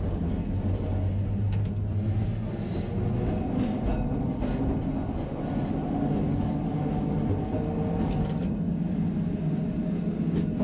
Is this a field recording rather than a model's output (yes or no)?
yes